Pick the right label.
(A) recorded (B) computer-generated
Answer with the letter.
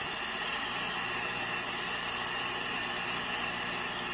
A